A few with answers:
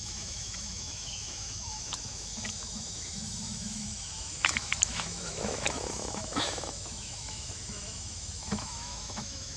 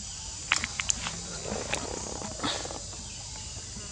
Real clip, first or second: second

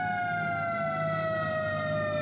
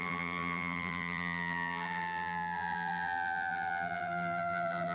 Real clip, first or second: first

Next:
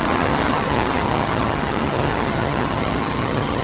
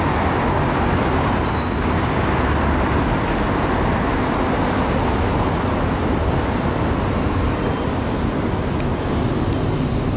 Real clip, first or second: second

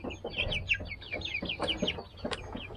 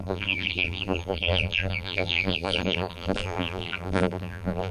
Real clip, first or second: first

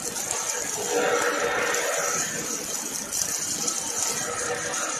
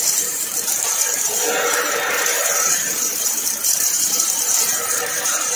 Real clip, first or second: first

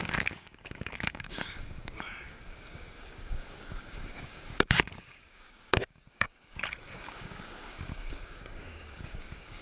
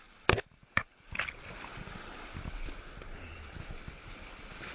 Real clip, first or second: second